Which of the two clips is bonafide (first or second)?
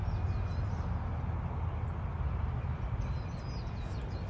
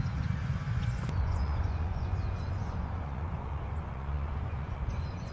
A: first